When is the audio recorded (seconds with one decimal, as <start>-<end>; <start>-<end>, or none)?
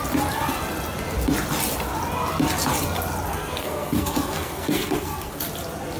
0.0-3.3; 5.4-6.0